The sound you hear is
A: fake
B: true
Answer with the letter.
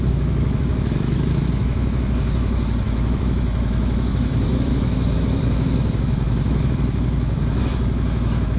A